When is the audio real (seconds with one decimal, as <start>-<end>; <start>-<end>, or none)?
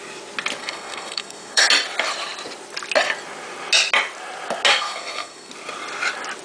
0.0-0.6; 1.6-4.7; 5.5-6.4